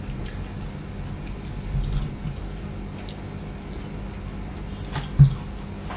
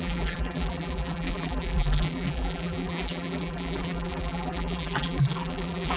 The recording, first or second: first